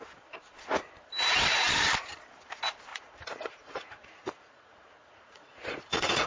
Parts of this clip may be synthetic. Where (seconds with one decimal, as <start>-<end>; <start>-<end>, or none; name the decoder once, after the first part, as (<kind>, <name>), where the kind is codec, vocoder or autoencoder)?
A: 2.9-6.3 (vocoder, Vocos)